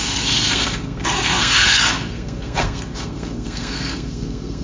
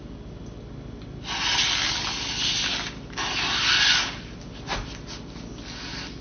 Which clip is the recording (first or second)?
second